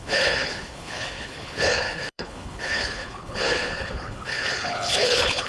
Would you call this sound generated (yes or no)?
yes